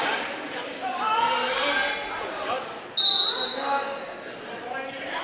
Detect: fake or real real